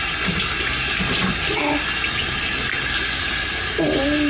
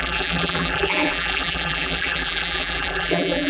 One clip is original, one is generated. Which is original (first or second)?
first